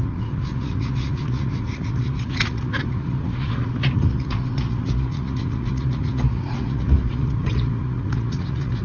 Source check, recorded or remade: remade